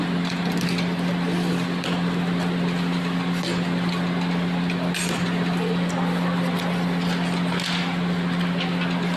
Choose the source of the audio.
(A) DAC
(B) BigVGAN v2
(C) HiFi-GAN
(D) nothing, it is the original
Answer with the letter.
D